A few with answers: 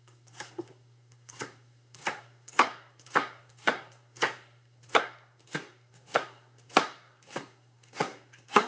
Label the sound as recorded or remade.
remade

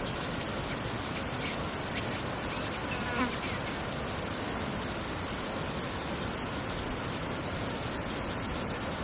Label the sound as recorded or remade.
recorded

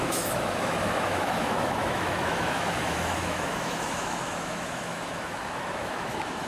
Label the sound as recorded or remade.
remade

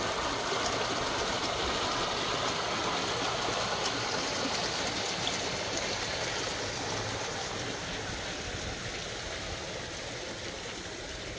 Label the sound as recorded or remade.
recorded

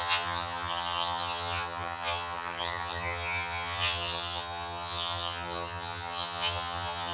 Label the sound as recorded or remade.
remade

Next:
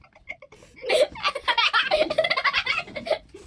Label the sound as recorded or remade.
recorded